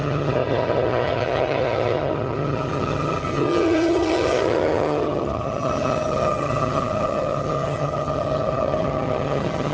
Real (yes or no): no